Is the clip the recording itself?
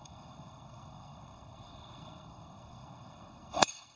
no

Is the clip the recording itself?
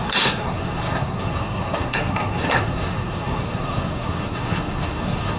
no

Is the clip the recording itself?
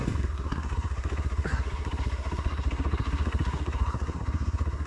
no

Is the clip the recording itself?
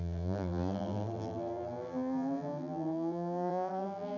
no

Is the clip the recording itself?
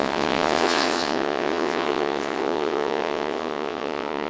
no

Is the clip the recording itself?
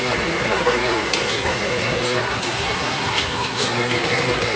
no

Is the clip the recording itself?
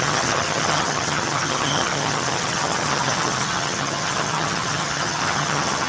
no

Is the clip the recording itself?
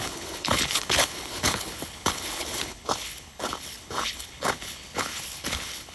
no